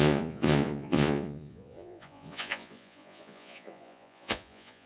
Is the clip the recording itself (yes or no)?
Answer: no